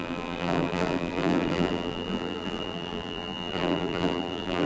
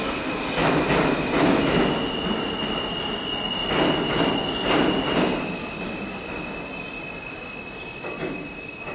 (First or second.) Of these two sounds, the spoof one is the first